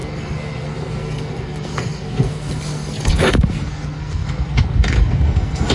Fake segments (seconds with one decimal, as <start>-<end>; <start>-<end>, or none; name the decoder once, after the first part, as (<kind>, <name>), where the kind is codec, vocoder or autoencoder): 0.0-5.7 (codec, SNAC)